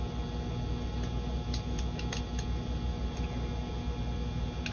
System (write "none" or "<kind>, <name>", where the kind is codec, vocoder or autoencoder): none